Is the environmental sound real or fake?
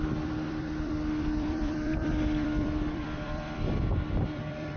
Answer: fake